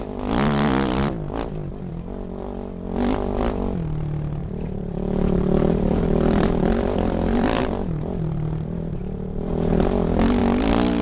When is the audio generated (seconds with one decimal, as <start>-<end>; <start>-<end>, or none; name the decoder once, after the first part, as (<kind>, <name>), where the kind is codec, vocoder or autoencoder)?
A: 4.4-9.7 (vocoder, BigVGAN v2)